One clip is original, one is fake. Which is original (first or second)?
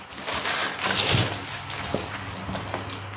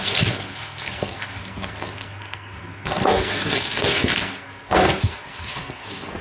first